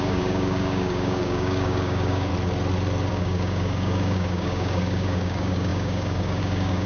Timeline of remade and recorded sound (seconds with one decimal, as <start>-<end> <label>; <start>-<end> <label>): 0.0-2.3 remade; 2.3-3.1 recorded; 3.1-6.9 remade